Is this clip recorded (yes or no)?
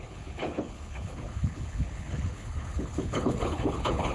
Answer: no